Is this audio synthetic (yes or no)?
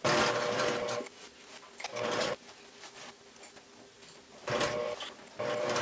no